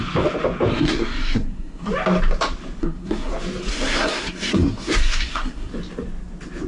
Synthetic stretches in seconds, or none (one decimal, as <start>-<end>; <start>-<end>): 0.7-1.9; 2.8-3.3; 3.7-5.7